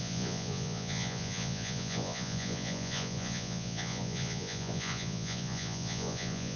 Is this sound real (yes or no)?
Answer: no